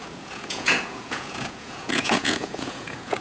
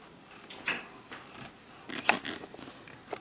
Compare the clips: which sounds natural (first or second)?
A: second